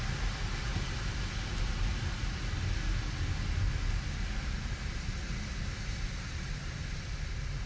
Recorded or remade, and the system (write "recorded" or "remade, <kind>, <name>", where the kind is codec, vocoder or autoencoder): recorded